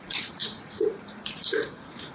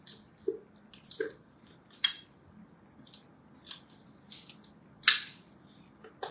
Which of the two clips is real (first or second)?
second